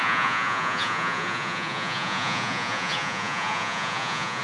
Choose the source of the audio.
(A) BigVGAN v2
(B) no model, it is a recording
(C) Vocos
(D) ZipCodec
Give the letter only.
C